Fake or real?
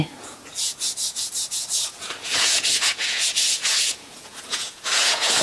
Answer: fake